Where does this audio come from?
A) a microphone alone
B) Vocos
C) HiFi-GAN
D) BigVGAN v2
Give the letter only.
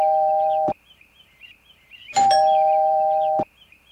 D